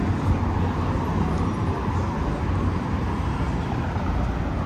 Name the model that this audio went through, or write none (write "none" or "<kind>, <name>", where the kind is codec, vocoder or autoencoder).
none